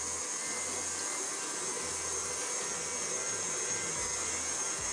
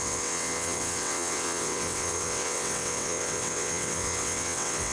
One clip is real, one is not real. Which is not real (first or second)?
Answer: second